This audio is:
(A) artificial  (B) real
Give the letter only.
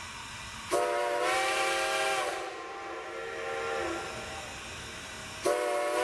B